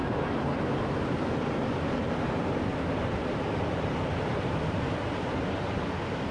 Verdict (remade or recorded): recorded